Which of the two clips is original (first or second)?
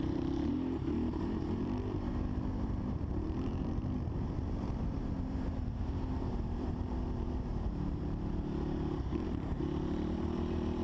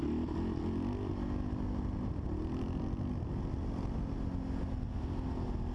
second